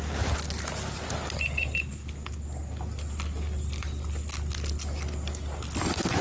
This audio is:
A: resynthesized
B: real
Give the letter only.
B